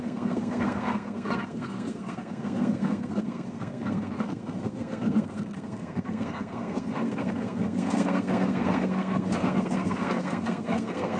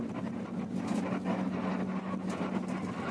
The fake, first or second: first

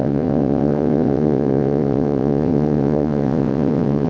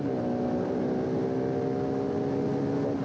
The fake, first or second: first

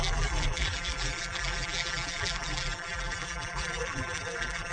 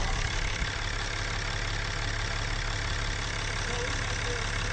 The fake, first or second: first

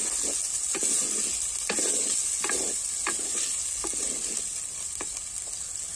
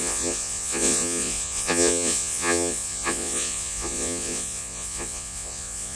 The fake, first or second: second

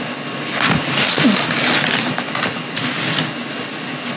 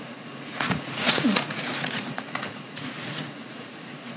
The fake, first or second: second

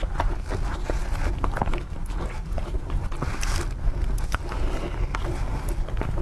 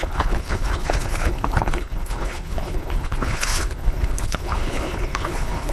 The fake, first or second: second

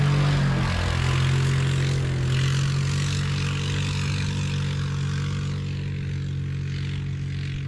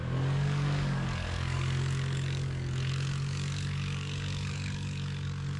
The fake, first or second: second